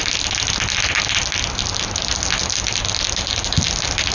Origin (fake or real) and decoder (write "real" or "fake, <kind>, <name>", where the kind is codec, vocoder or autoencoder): real